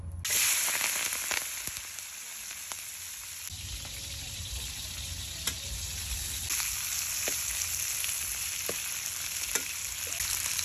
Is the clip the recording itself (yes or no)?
yes